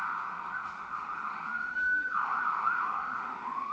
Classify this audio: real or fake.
fake